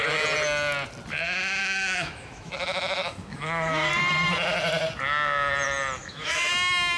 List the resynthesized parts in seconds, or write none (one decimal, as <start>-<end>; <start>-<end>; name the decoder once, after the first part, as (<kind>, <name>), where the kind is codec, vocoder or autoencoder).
1.6-3.9 (autoencoder, DAC-VAE); 6.0-6.5